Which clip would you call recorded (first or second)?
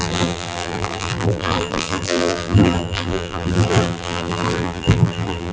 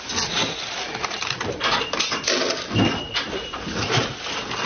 second